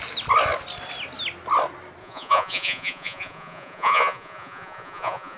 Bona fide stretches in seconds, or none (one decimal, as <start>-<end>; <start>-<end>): 0.0-2.0